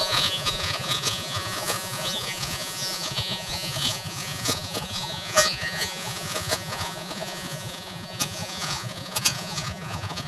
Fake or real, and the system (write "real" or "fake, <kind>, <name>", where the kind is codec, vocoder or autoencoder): fake, vocoder, Vocos